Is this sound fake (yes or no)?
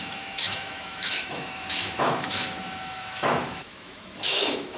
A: yes